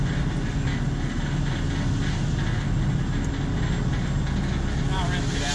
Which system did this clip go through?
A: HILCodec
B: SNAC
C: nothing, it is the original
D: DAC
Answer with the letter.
C